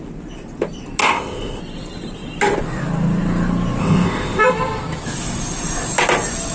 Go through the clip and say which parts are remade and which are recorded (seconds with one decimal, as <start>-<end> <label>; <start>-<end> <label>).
0.0-1.0 recorded; 1.0-1.6 remade; 1.6-3.8 recorded; 3.8-4.4 remade; 4.4-6.5 recorded